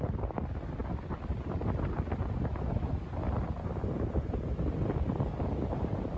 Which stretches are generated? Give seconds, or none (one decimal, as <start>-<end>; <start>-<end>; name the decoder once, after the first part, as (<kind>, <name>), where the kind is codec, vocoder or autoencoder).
none